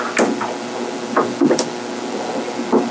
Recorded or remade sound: recorded